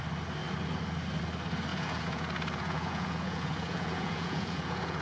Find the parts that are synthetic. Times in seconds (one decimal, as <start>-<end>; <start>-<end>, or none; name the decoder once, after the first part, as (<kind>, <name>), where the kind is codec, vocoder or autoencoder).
1.7-5.0 (vocoder, Vocos)